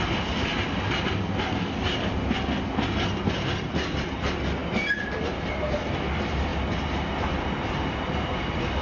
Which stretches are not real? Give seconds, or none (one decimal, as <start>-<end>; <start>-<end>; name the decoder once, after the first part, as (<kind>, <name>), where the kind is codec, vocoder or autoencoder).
none